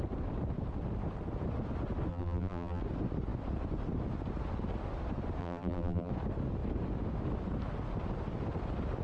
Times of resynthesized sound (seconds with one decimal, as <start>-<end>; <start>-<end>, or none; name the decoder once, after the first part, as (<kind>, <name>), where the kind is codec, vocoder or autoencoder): 2.1-2.8 (vocoder, BigVGAN v2); 5.4-6.1